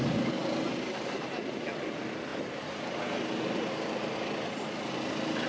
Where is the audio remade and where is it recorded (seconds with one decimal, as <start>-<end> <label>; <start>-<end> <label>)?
0.0-5.5 recorded